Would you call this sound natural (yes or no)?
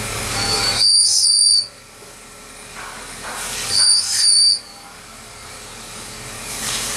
no